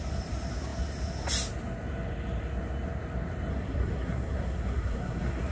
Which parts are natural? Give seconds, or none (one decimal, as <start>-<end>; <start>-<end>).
0.0-3.5